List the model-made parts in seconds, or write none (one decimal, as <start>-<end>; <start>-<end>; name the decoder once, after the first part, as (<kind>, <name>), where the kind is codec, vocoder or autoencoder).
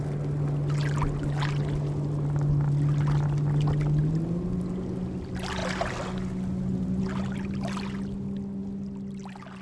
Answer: none